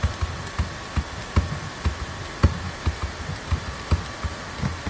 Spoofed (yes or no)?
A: no